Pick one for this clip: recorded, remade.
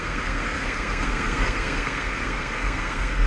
remade